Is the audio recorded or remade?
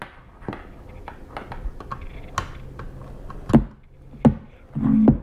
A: recorded